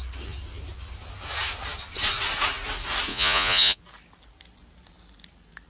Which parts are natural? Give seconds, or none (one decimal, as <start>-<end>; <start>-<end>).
0.0-3.1; 3.8-5.7